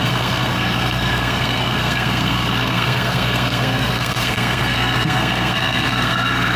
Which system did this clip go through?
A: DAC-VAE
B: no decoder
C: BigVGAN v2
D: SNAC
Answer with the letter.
D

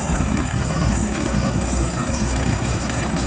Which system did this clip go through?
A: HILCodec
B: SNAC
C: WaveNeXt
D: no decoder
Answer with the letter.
B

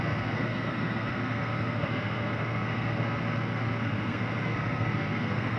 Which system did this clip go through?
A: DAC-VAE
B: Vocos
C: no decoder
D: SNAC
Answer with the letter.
D